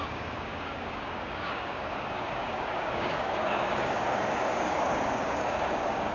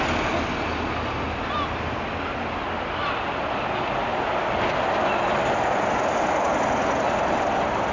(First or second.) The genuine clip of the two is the second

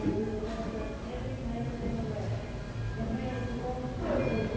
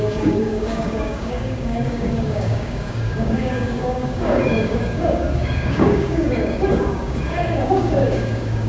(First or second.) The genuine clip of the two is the first